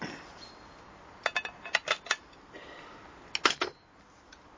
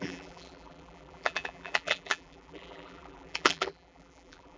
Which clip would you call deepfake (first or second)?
second